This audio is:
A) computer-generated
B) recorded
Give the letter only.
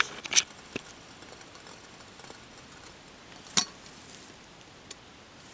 B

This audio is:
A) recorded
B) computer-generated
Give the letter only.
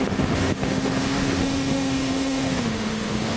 B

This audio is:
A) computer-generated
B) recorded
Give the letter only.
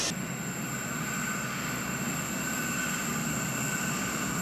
B